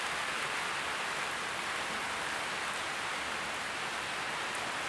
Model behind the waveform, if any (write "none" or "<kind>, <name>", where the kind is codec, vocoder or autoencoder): none